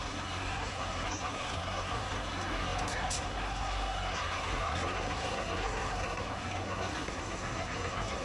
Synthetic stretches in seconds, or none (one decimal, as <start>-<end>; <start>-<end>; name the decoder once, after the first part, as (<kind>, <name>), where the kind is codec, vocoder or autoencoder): 0.0-8.2 (codec, SNAC)